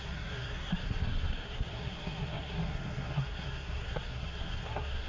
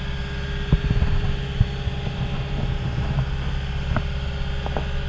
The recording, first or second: second